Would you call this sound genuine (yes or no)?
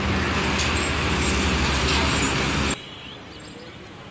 yes